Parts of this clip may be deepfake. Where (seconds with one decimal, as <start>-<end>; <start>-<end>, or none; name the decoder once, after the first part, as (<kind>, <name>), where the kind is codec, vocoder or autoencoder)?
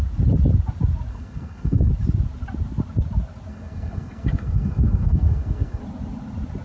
1.1-1.9 (codec, SNAC); 3.5-5.8